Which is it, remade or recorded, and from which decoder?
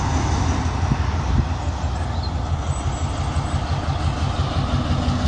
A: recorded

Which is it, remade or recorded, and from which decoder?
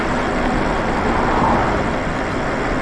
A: recorded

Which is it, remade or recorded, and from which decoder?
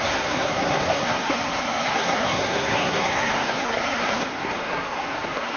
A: remade, codec, SNAC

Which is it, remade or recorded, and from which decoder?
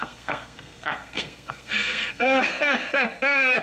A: remade, codec, SNAC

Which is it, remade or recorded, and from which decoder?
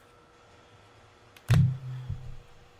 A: recorded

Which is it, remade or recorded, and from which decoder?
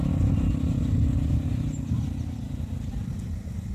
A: recorded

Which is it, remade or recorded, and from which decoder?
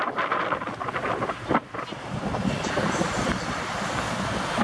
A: recorded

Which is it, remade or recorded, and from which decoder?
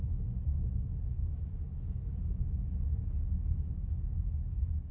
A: remade, autoencoder, DAC-VAE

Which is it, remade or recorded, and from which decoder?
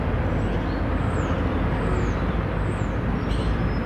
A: recorded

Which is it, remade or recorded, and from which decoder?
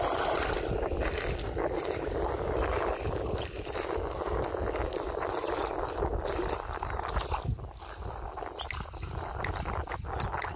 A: recorded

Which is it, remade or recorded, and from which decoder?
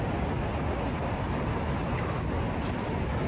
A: recorded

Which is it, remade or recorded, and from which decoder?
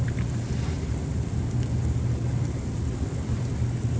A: recorded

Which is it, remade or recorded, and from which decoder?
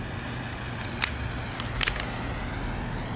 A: remade, vocoder, BigVGAN v2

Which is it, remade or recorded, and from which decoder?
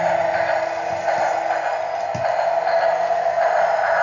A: recorded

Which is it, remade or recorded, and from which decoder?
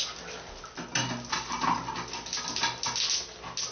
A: recorded